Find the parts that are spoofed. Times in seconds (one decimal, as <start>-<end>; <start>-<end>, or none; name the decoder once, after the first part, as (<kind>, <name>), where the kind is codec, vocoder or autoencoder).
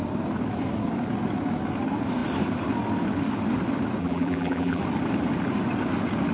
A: 4.0-4.8 (vocoder, BigVGAN v2)